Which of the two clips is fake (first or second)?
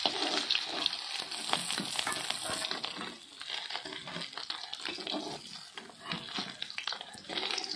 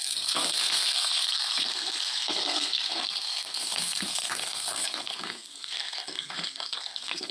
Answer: second